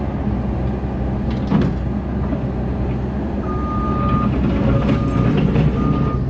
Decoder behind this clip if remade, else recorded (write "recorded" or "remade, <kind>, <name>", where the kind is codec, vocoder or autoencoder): recorded